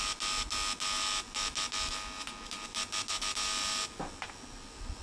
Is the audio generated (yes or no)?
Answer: no